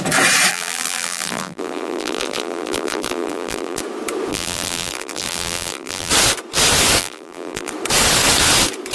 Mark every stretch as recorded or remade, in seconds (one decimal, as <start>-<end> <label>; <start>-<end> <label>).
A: 0.0-0.5 recorded; 0.5-3.8 remade; 3.8-4.3 recorded; 4.3-6.1 remade; 6.1-7.0 recorded; 7.0-7.7 remade; 7.7-8.9 recorded